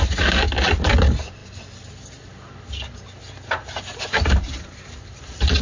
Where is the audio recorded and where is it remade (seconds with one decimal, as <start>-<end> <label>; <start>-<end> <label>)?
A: 0.0-5.6 recorded